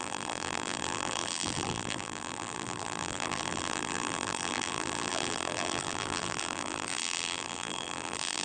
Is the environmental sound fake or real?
fake